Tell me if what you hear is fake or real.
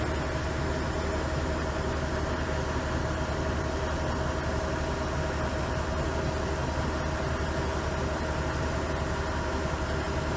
real